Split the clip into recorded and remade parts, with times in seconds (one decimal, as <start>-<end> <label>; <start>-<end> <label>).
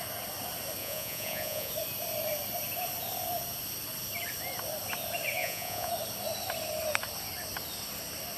0.0-0.8 recorded; 0.8-1.7 remade; 1.7-5.4 recorded; 5.4-5.9 remade; 5.9-8.4 recorded